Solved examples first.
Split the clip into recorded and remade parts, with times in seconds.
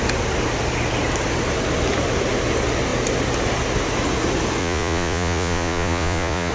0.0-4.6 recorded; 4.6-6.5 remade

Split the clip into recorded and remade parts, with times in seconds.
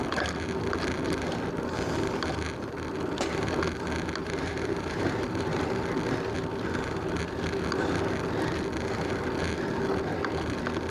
0.0-4.2 recorded; 4.2-5.6 remade; 5.6-10.9 recorded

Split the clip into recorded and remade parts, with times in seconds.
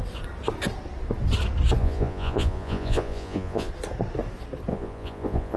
0.0-1.8 recorded; 1.8-3.7 remade; 3.7-4.7 recorded; 4.7-5.6 remade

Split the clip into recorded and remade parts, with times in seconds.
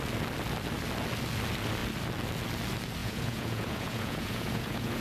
0.0-3.0 recorded; 3.0-5.0 remade